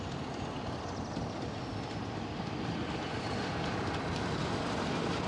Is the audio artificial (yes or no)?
yes